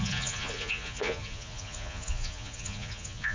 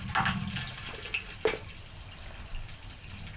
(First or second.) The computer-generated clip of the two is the first